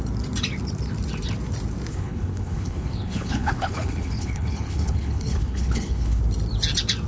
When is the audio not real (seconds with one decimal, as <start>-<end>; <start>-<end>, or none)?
1.9-6.2